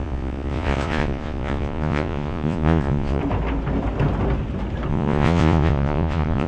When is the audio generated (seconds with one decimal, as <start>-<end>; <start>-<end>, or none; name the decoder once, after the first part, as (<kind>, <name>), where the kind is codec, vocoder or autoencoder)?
0.0-3.2 (vocoder, Vocos); 4.9-6.5